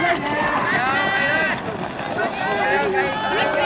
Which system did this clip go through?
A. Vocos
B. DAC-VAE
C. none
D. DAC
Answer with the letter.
C